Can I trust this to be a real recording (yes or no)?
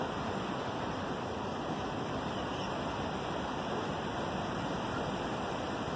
no